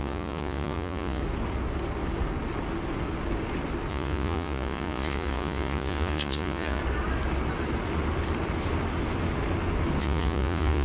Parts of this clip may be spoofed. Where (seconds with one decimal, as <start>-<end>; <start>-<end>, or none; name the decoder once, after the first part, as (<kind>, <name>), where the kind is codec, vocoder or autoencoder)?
0.0-1.2 (vocoder, Vocos); 3.9-6.8; 10.0-10.8